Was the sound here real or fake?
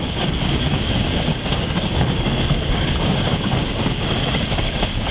fake